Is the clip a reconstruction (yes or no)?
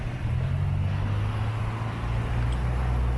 no